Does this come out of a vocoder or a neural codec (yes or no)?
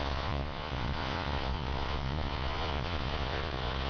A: yes